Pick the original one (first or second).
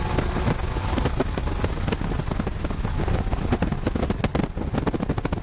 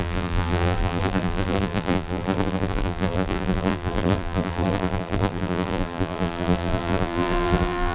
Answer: first